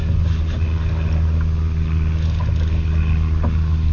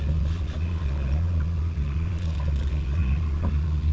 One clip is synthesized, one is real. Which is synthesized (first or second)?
second